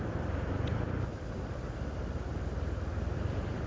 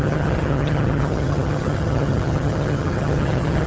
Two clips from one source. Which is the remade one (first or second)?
second